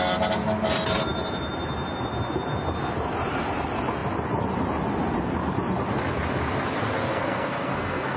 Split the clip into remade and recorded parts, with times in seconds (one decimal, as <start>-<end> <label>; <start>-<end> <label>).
0.0-7.1 recorded; 7.1-8.2 remade